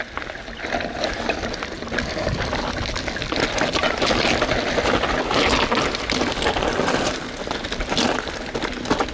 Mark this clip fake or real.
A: real